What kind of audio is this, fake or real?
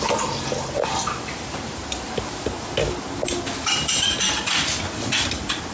real